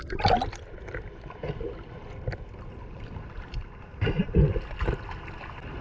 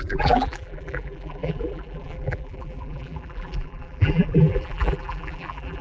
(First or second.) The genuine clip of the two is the first